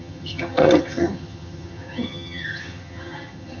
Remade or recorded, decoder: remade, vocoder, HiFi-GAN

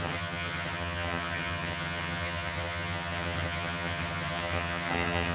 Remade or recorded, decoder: remade, vocoder, HiFi-GAN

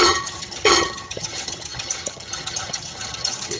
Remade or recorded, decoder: remade, vocoder, HiFi-GAN